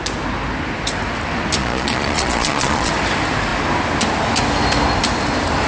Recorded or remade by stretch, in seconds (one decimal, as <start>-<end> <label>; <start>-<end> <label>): 0.0-1.6 recorded; 1.6-2.9 remade; 2.9-5.7 recorded